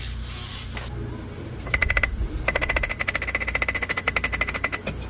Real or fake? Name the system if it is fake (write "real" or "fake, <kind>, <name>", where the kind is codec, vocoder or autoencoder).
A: real